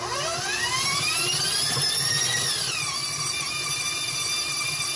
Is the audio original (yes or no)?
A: yes